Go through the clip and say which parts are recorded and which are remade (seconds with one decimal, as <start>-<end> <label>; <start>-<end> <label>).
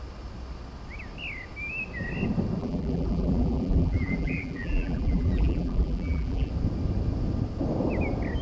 0.0-2.6 recorded; 2.6-6.5 remade; 6.5-8.4 recorded